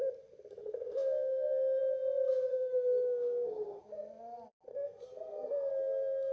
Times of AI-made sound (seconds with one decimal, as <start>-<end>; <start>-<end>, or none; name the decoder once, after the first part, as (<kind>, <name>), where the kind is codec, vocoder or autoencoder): 0.6-1.8 (codec, SNAC); 2.5-3.8; 4.7-5.7